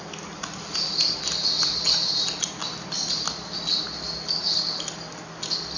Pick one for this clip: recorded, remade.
recorded